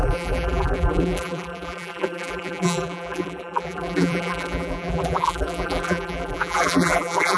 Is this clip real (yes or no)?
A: no